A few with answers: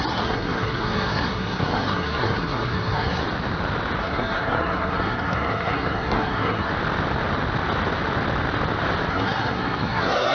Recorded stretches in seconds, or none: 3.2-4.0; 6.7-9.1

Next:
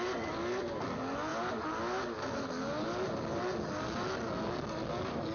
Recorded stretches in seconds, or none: 0.0-5.3

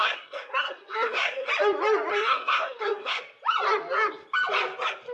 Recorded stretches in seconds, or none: 1.5-2.1; 3.2-5.1

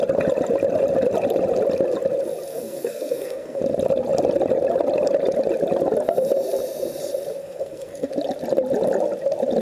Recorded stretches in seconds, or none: 0.0-2.5; 3.6-7.4; 8.1-9.6

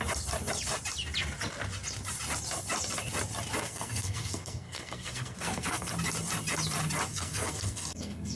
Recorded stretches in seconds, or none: 0.0-3.6; 5.9-7.1